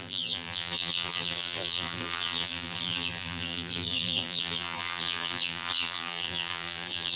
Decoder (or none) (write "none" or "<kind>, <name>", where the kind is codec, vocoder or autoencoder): vocoder, BigVGAN v2